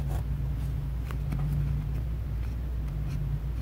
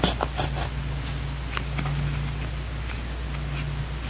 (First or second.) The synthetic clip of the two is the first